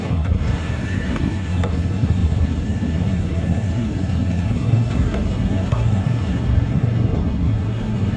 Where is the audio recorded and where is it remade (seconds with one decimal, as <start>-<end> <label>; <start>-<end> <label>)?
0.0-8.2 remade